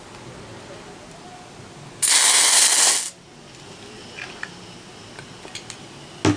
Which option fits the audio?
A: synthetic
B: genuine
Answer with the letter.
B